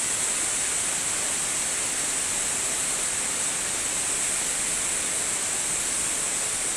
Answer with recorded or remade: recorded